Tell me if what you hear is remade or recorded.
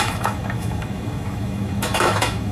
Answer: remade